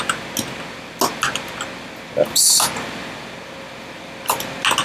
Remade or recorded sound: recorded